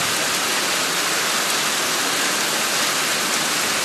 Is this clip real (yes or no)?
yes